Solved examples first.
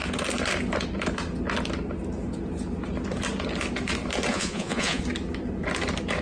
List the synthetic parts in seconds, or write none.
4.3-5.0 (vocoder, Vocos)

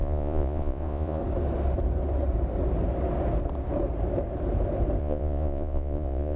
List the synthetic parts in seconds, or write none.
0.0-1.2 (vocoder, Vocos); 5.0-6.4

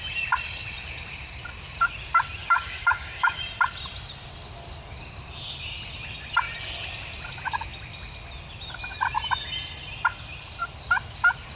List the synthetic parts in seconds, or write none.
2.4-3.4 (codec, DAC)

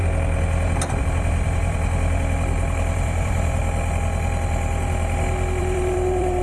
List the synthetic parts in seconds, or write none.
1.0-3.6 (vocoder, BigVGAN v2); 5.6-6.4

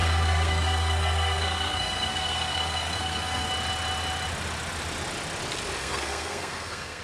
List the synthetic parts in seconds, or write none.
0.0-3.5 (codec, SNAC); 5.8-7.0

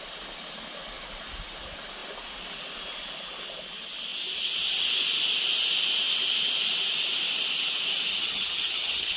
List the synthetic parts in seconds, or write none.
8.1-9.2 (vocoder, HiFi-GAN)